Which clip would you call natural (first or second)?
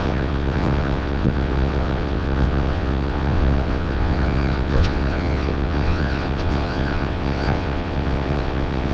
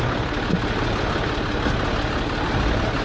second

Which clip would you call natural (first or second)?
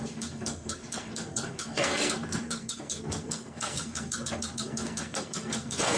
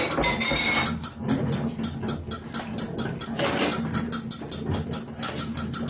second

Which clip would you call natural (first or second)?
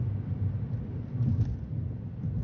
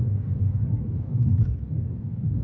first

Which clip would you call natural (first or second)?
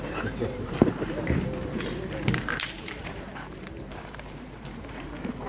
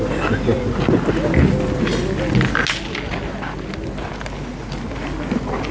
second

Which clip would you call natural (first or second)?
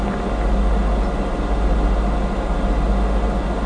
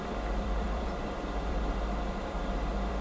first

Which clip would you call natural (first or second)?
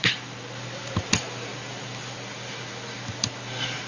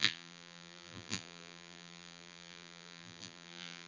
first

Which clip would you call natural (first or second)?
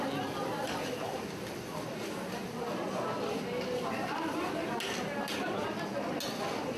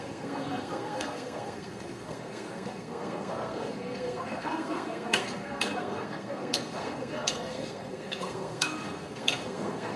first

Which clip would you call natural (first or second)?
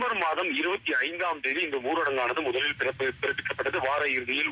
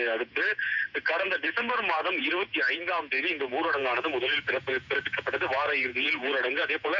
first